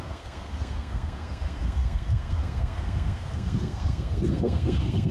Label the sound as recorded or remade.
remade